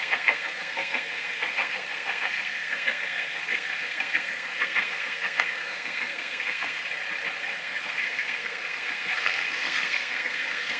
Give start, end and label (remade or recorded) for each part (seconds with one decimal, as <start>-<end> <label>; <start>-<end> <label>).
0.0-6.8 remade; 6.8-7.4 recorded; 7.4-10.8 remade